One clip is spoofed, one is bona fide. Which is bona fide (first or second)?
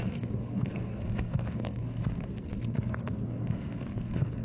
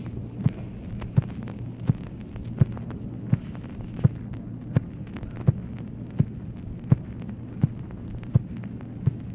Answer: second